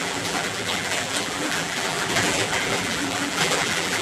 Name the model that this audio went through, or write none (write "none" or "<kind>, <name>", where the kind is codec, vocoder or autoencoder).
vocoder, BigVGAN v2